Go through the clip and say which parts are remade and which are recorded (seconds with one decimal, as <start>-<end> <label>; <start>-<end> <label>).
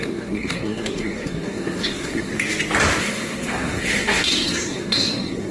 0.0-2.3 remade; 2.3-3.0 recorded; 3.0-5.5 remade